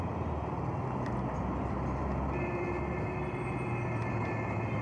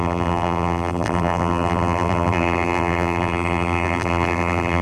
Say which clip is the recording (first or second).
first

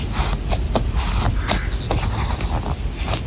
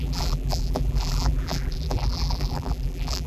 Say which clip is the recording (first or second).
first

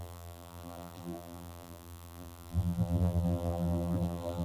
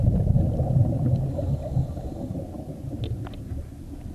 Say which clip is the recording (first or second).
second